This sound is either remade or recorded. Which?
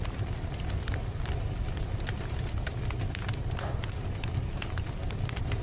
recorded